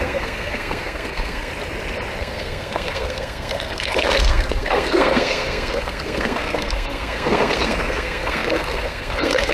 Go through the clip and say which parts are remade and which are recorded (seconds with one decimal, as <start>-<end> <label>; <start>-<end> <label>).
0.0-1.5 remade; 1.5-2.2 recorded; 2.2-9.5 remade